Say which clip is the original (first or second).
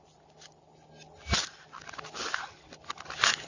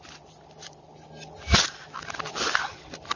first